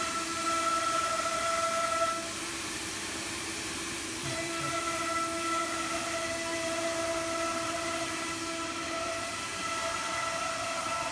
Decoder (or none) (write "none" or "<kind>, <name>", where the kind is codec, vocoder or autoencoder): vocoder, BigVGAN v2